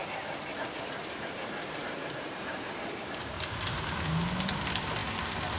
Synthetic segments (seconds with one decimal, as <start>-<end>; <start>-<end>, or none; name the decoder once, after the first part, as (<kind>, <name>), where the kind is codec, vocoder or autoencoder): 0.5-3.9 (vocoder, BigVGAN v2)